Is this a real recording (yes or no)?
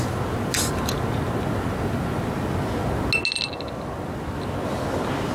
yes